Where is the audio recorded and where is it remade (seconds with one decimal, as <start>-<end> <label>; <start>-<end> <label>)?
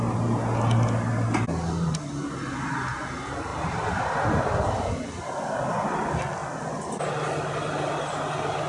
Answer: 0.0-3.5 recorded; 3.5-4.9 remade; 4.9-8.7 recorded